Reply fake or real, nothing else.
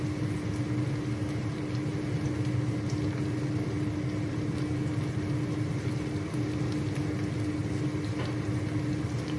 real